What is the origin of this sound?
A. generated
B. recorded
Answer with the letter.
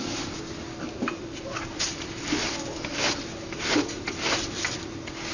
B